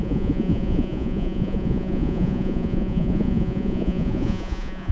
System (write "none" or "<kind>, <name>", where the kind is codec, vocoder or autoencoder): vocoder, Vocos